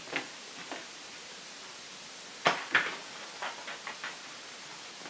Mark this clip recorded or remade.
recorded